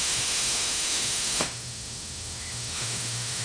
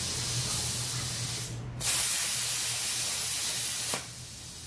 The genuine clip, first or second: second